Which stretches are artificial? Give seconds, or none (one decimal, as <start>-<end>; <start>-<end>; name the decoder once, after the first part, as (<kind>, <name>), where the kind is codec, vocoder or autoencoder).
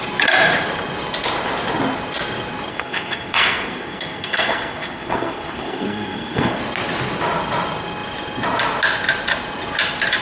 2.7-6.6 (codec, SNAC)